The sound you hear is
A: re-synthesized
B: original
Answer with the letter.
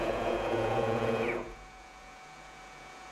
A